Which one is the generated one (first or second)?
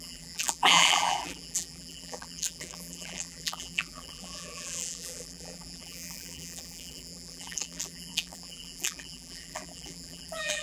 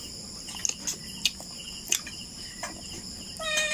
first